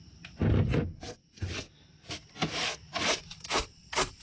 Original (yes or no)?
yes